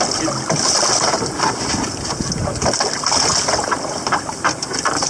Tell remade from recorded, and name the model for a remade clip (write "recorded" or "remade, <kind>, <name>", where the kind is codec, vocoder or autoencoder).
recorded